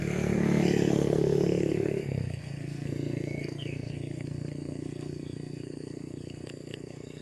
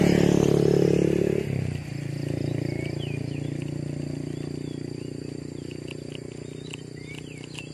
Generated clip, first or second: first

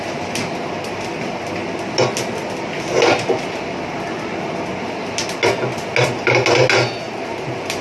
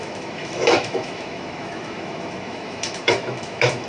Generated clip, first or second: second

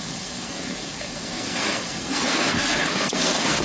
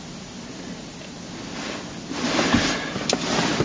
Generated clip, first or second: first